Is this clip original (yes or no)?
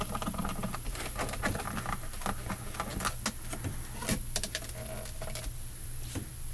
yes